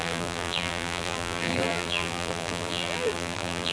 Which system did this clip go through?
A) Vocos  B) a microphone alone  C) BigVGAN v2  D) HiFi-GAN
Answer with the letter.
C